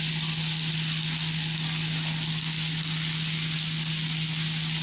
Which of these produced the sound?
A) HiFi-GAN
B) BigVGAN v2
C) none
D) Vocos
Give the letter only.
C